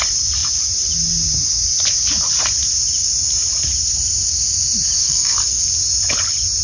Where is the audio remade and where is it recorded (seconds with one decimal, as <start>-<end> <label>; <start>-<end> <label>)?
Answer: 0.0-5.0 recorded; 5.0-5.6 remade; 5.6-6.6 recorded